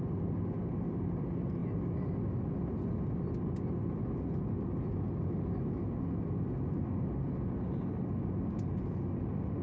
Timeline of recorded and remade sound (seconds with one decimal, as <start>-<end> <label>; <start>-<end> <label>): 0.0-9.6 recorded